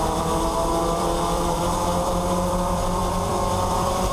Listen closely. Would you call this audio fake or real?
fake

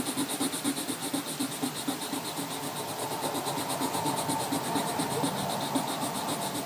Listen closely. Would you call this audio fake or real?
real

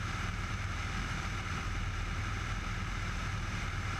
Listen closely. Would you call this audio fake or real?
fake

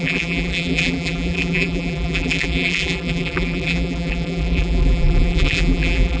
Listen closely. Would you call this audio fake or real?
fake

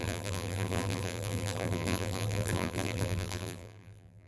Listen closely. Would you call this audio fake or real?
fake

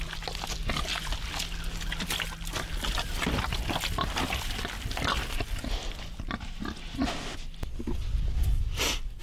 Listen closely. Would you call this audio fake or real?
real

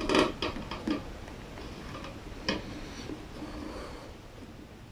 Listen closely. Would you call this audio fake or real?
real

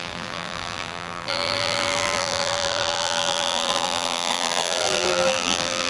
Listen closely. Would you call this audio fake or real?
fake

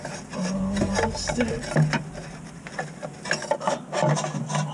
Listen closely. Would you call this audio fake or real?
real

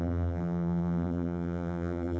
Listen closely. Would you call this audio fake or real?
fake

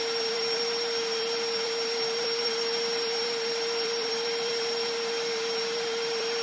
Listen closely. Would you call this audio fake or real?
fake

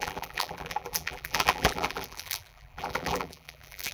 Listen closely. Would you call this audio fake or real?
fake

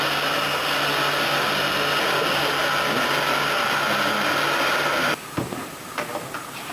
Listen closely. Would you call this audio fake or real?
real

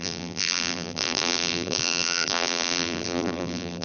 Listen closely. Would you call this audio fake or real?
fake